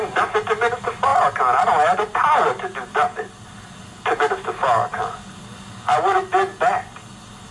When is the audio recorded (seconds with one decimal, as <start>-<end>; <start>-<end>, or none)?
0.0-7.5